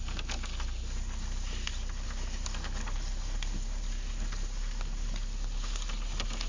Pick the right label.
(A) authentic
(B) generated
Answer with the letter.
A